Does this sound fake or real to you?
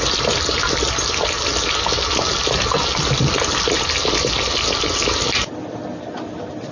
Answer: real